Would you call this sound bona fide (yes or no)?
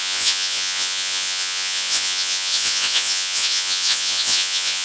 no